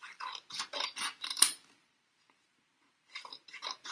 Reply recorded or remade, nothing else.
remade